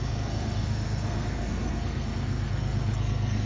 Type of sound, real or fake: fake